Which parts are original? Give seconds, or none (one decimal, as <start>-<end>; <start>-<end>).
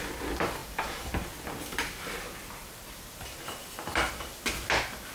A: 0.0-5.1